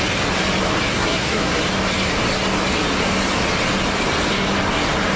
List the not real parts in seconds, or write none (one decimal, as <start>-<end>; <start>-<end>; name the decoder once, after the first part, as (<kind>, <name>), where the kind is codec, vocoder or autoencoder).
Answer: 0.9-1.6 (codec, SNAC)